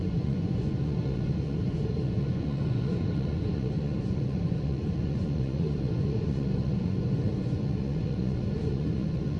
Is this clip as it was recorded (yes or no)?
no